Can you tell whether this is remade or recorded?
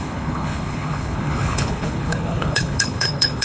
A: remade